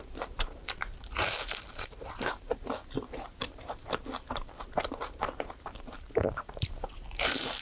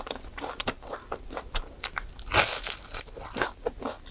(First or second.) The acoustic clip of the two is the second